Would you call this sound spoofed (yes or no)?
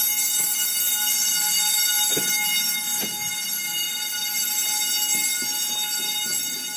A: no